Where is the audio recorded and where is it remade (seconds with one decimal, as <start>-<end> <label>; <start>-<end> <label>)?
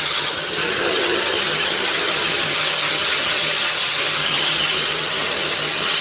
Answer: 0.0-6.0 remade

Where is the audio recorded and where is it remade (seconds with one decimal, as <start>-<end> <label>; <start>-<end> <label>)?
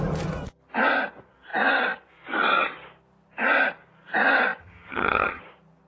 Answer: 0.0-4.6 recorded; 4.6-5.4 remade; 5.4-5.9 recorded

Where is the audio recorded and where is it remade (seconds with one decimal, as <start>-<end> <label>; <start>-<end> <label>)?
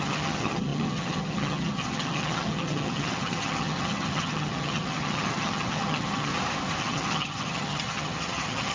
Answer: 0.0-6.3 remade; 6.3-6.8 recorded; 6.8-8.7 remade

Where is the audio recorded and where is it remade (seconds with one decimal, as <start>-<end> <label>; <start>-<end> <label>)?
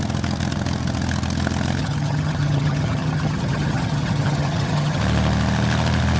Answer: 0.0-1.8 recorded; 1.8-5.0 remade; 5.0-6.2 recorded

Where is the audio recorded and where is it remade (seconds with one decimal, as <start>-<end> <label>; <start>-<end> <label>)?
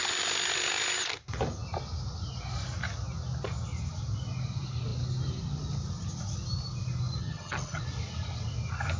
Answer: 0.0-7.2 recorded; 7.2-7.8 remade; 7.8-9.0 recorded